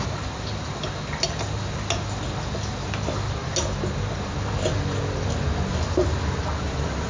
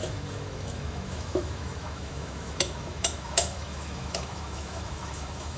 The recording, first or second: first